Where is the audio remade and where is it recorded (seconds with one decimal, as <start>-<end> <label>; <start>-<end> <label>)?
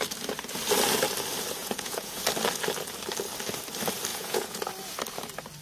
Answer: 0.0-1.6 recorded; 1.6-2.2 remade; 2.2-4.1 recorded; 4.1-4.7 remade; 4.7-5.6 recorded